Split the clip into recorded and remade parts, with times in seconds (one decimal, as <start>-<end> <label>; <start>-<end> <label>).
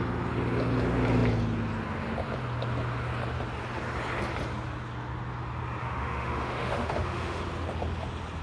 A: 0.0-5.8 recorded; 5.8-7.4 remade; 7.4-8.4 recorded